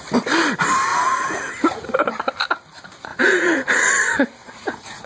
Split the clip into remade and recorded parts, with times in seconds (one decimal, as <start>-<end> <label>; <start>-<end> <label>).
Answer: 0.0-0.9 recorded; 0.9-1.5 remade; 1.5-3.1 recorded; 3.1-3.9 remade; 3.9-4.4 recorded; 4.4-5.1 remade